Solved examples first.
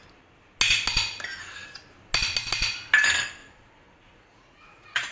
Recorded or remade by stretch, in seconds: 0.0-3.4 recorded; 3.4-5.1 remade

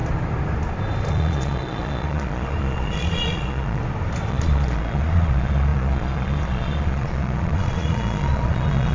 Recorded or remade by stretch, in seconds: 0.0-1.1 recorded; 1.1-3.8 remade; 3.8-4.3 recorded; 4.3-8.9 remade